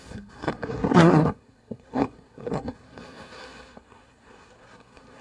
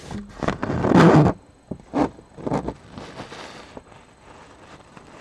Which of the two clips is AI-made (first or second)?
first